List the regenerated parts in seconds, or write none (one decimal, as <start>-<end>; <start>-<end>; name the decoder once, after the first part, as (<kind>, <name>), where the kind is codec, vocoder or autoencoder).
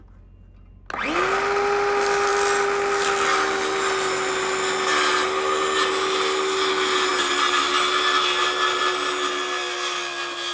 none